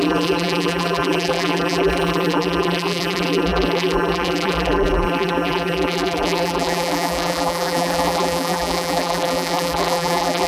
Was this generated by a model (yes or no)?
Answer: yes